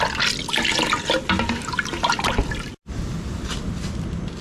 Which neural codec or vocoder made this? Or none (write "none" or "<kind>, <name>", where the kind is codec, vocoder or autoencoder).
none